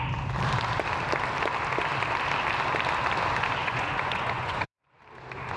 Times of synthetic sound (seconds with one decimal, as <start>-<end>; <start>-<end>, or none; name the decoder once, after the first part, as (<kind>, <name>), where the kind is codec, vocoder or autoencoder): 3.6-5.0 (vocoder, Vocos)